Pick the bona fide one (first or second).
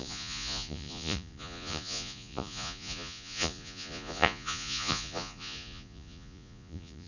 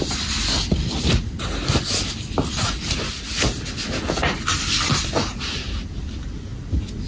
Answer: second